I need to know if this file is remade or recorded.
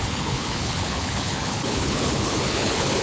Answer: remade